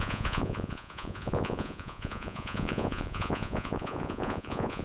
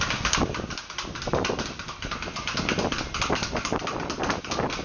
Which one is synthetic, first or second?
first